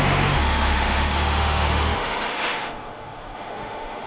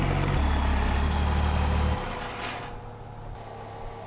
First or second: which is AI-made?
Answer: first